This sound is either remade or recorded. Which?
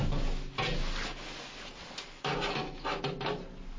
recorded